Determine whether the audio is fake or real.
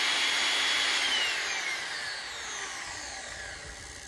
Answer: real